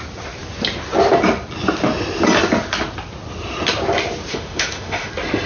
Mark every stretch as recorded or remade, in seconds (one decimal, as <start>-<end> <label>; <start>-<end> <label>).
0.0-4.3 recorded; 4.3-5.1 remade; 5.1-5.5 recorded